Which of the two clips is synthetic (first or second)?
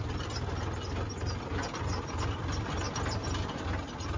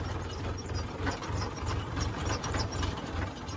second